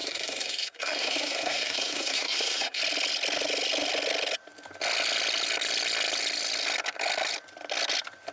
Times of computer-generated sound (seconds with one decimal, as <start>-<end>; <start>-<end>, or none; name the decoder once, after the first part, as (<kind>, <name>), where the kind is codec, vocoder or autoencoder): 0.0-2.8 (codec, SNAC)